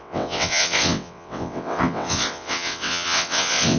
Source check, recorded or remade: remade